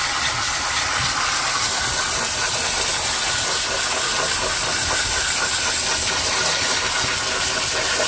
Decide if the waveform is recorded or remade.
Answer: recorded